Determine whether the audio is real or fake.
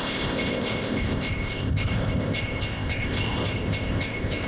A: fake